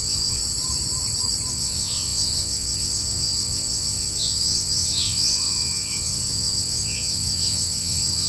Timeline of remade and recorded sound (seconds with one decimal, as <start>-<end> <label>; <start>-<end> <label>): 0.0-0.4 remade; 0.4-1.5 recorded; 1.5-8.3 remade